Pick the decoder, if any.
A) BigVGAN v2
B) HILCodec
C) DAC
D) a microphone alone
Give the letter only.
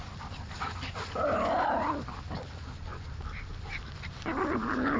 D